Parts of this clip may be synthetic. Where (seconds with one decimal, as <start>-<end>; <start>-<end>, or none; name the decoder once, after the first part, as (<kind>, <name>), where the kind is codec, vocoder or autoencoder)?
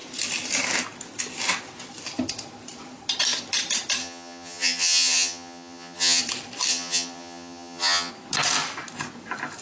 4.0-6.2 (vocoder, HiFi-GAN); 6.7-8.1